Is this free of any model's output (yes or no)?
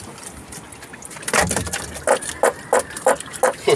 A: yes